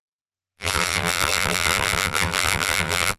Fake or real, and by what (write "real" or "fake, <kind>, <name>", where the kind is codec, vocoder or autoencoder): fake, vocoder, BigVGAN v2